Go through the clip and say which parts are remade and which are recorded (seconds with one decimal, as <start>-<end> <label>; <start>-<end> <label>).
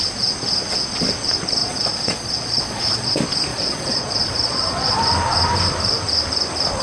0.0-1.6 recorded; 1.6-3.1 remade; 3.1-3.5 recorded; 3.5-5.0 remade; 5.0-6.8 recorded